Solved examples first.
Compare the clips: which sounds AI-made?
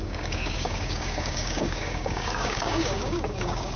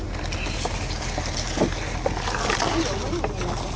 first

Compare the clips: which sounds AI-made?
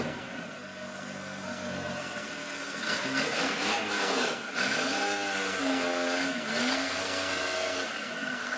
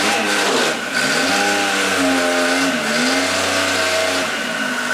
first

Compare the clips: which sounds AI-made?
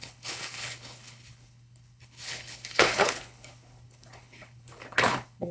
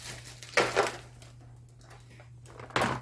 first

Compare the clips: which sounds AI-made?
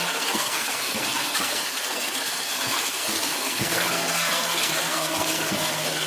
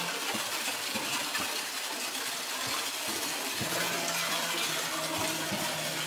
first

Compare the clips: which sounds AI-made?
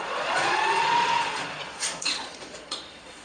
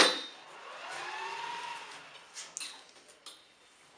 first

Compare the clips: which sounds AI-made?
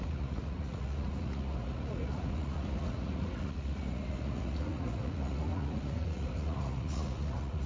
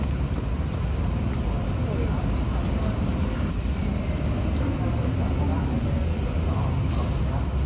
first